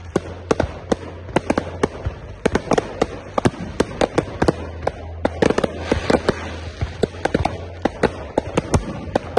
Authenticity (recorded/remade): recorded